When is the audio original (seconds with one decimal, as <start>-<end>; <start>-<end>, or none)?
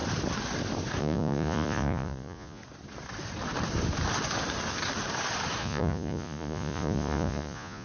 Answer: 0.0-1.0; 2.6-5.6